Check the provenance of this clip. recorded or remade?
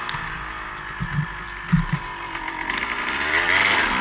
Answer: recorded